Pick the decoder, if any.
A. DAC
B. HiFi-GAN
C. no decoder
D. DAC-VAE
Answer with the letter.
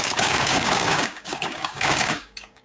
A